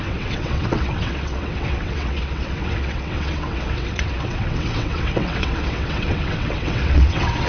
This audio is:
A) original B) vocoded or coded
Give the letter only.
B